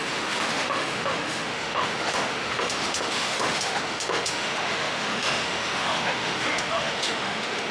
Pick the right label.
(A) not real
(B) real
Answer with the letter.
A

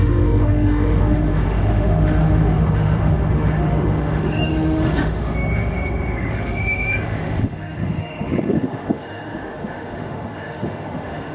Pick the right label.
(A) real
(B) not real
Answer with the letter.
B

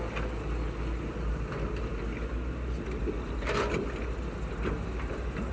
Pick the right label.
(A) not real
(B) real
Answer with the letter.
B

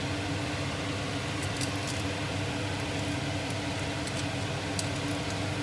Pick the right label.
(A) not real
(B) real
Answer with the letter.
B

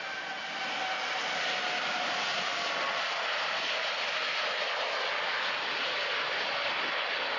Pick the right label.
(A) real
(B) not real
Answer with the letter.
A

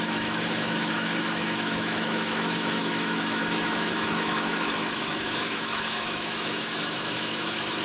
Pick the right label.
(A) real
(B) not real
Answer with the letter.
B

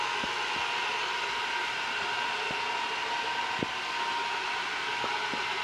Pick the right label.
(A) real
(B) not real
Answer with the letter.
A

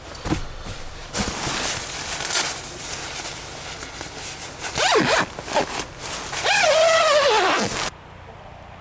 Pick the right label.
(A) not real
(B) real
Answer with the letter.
B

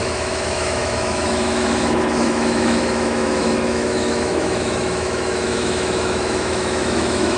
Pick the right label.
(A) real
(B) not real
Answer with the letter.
B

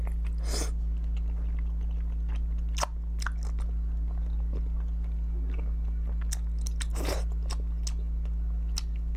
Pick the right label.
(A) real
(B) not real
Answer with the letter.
A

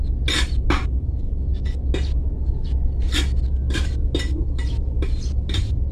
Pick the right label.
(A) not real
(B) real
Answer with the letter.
B